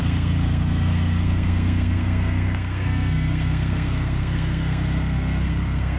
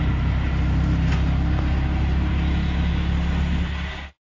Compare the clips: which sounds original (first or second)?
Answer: second